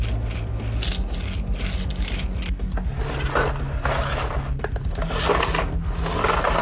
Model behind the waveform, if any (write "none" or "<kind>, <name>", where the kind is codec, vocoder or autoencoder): none